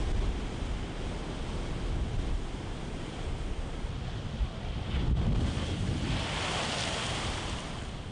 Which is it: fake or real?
real